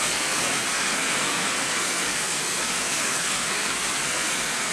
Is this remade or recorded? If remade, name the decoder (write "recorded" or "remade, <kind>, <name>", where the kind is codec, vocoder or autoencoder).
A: remade, codec, SNAC